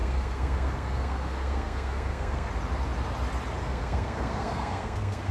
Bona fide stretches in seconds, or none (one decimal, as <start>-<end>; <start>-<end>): 2.5-3.6